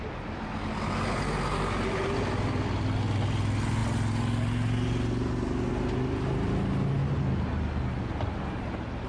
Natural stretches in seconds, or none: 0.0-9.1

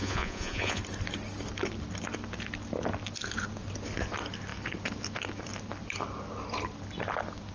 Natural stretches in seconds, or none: 0.8-7.5

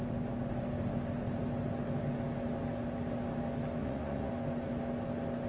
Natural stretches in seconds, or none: 0.0-3.8; 4.3-5.5

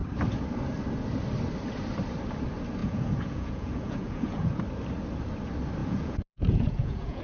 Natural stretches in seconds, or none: 0.0-2.8; 4.6-5.8

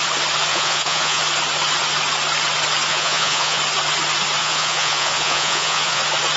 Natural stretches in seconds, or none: 0.0-0.5; 1.2-2.9; 3.6-4.4; 6.0-6.4

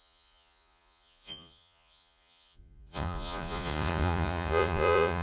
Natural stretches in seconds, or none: none

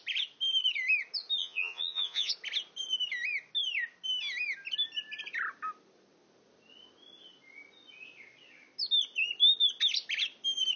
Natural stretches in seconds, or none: 0.0-1.4; 2.3-10.8